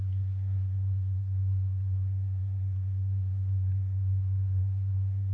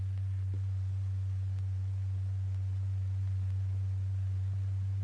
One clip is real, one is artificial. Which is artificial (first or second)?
first